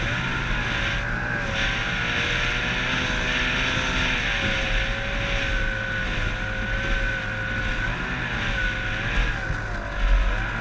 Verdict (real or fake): real